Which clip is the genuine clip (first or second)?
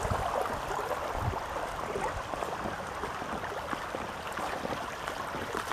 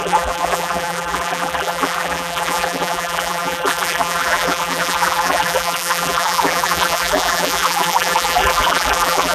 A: first